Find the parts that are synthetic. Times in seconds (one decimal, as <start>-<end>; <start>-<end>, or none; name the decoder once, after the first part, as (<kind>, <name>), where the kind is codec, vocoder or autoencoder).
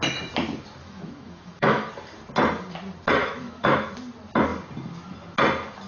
0.8-1.9 (autoencoder, DAC-VAE); 3.2-3.9